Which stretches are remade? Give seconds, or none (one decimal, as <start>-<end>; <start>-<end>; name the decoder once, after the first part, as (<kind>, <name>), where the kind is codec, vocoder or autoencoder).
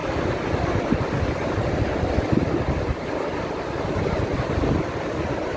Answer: none